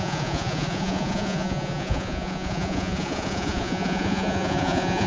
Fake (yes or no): yes